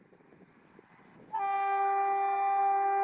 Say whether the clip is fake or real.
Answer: real